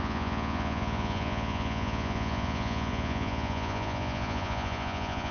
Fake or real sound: fake